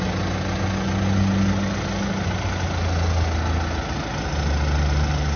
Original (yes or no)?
yes